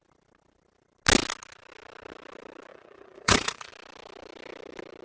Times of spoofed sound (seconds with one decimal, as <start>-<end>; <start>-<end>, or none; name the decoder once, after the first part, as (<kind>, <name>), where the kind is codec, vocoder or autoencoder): 2.7-3.7 (vocoder, Vocos)